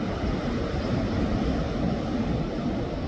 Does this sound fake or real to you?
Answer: real